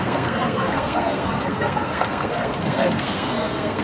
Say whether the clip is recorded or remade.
remade